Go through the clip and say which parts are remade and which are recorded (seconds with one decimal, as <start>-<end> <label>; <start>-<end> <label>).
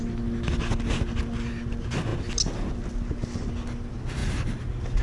0.0-5.0 recorded